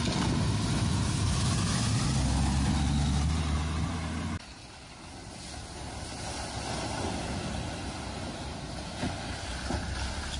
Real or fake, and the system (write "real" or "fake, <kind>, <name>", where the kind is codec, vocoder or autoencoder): real